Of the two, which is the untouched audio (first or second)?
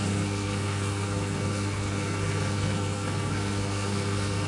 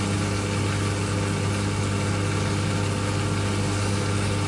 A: second